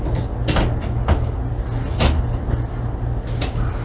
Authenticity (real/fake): real